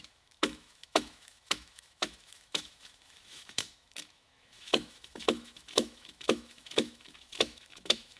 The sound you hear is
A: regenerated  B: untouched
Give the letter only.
A